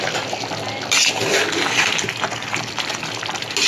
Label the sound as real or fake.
real